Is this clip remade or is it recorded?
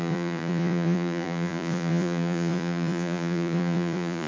remade